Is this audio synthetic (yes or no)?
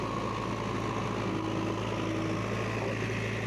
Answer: no